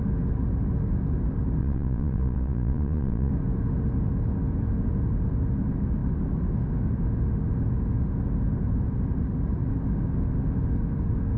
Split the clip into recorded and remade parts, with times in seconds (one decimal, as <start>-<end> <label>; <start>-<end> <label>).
0.0-1.6 recorded; 1.6-3.3 remade; 3.3-11.4 recorded